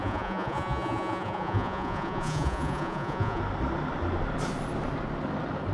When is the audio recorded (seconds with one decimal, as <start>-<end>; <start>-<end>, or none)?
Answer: 3.4-5.7